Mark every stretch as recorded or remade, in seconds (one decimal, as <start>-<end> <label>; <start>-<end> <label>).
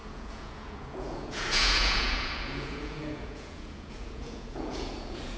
0.0-5.4 remade